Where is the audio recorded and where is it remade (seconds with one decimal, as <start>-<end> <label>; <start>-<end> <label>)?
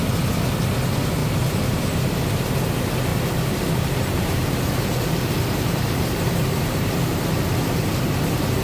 0.0-1.2 recorded; 1.2-2.1 remade; 2.1-3.1 recorded; 3.1-7.2 remade; 7.2-8.6 recorded